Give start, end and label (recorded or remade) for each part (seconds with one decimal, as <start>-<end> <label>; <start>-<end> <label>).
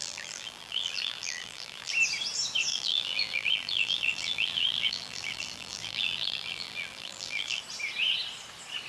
0.0-1.9 remade; 1.9-2.7 recorded; 2.7-7.6 remade; 7.6-8.9 recorded